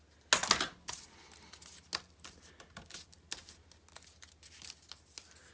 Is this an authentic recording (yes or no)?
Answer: yes